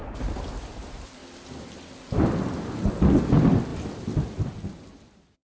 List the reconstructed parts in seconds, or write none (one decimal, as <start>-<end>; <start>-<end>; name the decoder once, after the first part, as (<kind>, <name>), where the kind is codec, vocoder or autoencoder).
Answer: 0.0-3.7 (vocoder, BigVGAN v2); 4.4-5.5